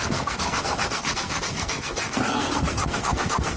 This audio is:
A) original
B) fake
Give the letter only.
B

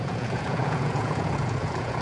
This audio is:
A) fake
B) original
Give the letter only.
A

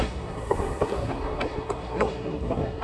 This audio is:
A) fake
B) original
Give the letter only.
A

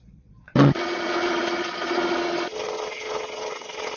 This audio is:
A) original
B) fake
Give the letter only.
B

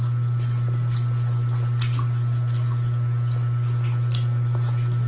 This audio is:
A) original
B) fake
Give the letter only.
A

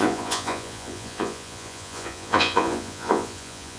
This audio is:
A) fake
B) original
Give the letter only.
A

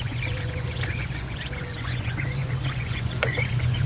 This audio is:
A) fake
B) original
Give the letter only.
A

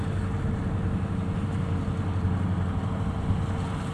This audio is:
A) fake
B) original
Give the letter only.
B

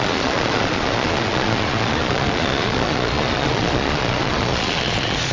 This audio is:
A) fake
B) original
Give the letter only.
A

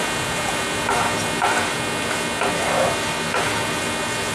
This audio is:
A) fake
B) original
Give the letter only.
B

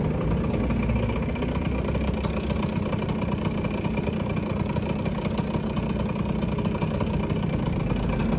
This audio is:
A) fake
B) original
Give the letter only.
B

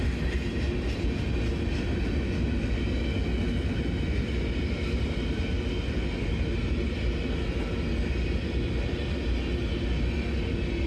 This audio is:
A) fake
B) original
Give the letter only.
B